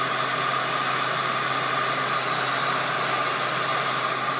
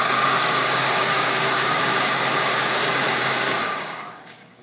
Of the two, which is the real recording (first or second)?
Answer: first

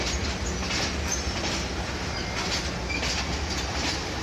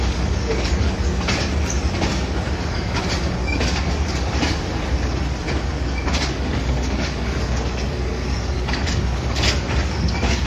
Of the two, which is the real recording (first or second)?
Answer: first